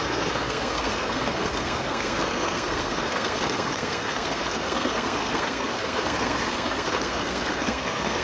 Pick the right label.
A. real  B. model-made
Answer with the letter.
B